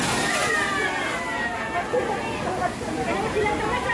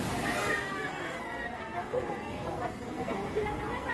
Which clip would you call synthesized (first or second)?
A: second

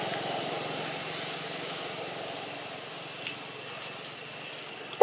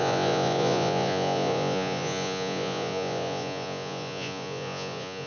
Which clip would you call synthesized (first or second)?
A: second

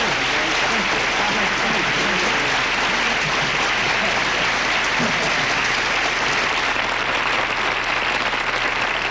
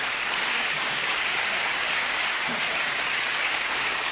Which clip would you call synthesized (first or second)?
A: second